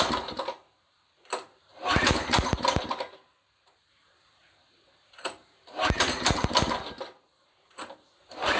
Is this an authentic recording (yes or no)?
no